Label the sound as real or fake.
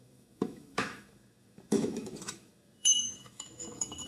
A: fake